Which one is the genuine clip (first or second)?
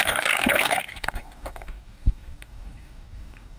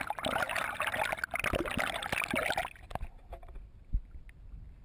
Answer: second